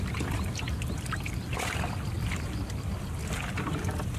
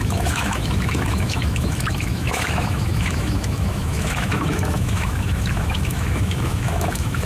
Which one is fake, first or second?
second